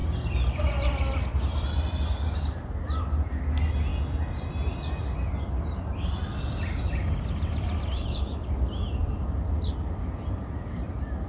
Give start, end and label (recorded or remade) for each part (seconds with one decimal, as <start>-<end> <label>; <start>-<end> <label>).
0.0-11.3 recorded